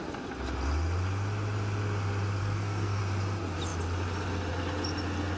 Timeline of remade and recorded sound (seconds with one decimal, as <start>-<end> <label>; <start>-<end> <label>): 0.0-2.4 recorded; 2.4-3.0 remade; 3.0-5.4 recorded